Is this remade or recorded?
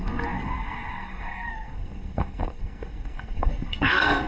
remade